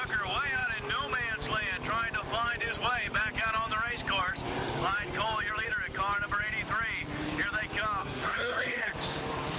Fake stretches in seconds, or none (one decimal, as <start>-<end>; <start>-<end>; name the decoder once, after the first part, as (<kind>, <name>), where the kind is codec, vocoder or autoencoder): 8.0-8.9 (codec, SNAC)